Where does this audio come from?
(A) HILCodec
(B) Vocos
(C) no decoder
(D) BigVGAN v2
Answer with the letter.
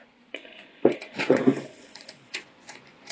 B